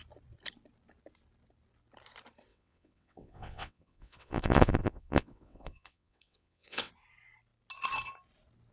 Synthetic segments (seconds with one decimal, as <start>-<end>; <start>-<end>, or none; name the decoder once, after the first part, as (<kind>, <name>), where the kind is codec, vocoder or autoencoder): 2.5-6.9 (vocoder, WaveNeXt)